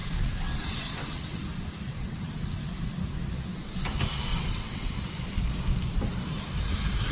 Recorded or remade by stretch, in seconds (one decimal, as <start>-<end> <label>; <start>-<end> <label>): 0.0-1.4 remade; 1.4-1.9 recorded; 1.9-3.0 remade; 3.0-4.3 recorded; 4.3-4.9 remade; 4.9-7.1 recorded